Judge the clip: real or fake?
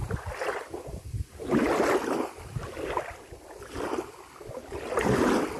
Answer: real